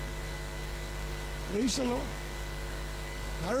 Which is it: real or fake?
fake